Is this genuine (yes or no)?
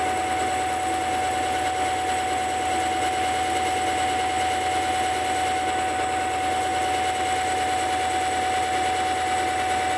yes